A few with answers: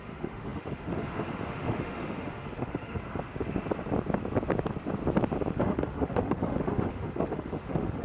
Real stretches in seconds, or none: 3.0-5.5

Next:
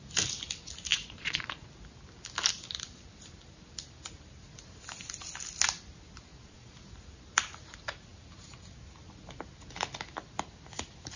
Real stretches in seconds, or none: 0.0-0.9; 1.7-6.3; 6.9-11.2

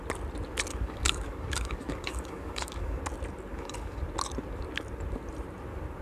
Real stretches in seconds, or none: 0.0-0.7; 3.0-3.5; 4.0-6.0